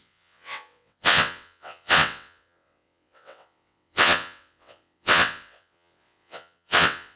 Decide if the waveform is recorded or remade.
remade